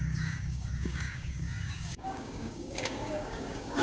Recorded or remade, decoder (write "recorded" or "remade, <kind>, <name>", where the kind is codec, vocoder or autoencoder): remade, codec, DAC